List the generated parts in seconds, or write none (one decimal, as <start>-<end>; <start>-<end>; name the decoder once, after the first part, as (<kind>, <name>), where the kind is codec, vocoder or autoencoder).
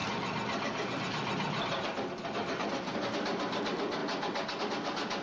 none